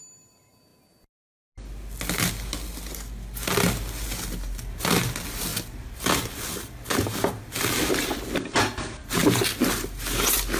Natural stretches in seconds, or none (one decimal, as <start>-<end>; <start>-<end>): 0.0-10.6